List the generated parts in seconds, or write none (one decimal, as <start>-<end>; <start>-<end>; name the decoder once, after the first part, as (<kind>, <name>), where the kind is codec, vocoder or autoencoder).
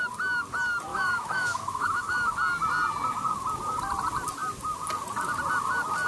0.9-2.3 (autoencoder, DAC-VAE)